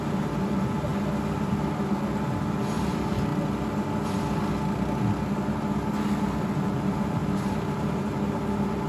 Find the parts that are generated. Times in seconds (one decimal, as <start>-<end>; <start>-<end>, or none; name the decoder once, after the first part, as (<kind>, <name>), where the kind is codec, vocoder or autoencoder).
0.0-0.9 (vocoder, BigVGAN v2); 1.5-3.3; 5.9-8.9